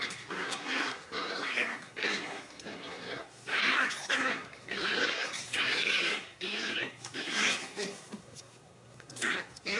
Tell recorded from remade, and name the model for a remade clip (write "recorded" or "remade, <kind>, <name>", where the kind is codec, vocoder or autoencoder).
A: remade, codec, SNAC